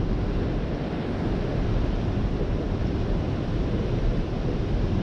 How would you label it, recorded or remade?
remade